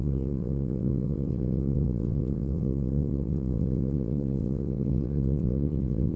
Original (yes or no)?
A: no